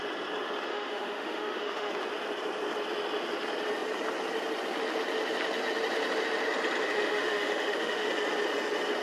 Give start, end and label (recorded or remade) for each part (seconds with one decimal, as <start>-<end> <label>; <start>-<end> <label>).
0.0-0.7 recorded; 0.7-1.9 remade; 1.9-6.8 recorded; 6.8-8.1 remade; 8.1-9.0 recorded